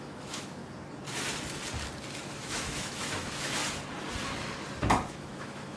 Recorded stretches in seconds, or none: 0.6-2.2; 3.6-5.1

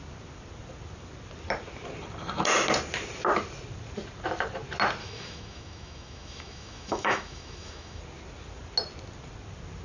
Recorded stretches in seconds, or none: 0.0-5.0; 8.0-9.8